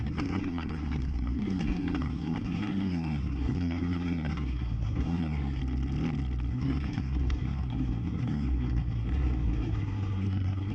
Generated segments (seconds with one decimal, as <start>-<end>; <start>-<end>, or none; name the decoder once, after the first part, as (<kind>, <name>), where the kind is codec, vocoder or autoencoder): 0.0-5.6 (codec, SNAC); 6.5-10.7